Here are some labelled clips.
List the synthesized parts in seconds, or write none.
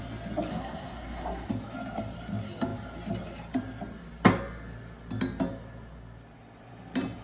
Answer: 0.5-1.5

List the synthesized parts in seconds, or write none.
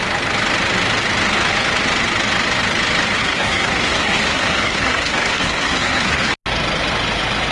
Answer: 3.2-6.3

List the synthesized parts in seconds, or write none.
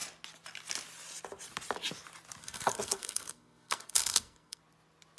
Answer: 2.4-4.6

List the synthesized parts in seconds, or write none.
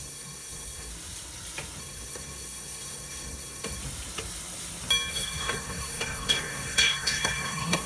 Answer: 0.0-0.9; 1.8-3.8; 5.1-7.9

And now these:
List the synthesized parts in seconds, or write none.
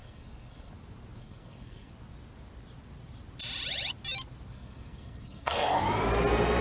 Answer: 0.0-0.7; 1.2-1.9; 4.5-5.8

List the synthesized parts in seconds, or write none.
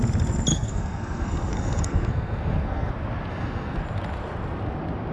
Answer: 0.5-2.9; 3.3-3.8